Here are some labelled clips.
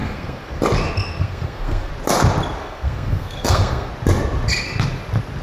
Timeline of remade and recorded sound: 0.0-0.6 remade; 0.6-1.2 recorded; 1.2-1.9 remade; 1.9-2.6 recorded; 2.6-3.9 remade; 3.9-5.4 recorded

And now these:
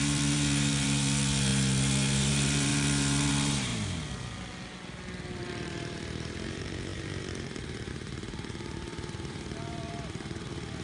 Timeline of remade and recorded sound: 0.0-3.7 remade; 3.7-5.4 recorded; 5.4-10.8 remade